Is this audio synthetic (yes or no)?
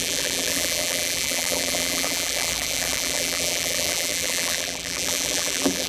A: yes